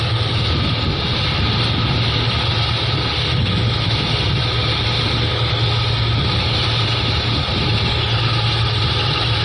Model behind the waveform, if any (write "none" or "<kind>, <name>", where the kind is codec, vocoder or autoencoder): none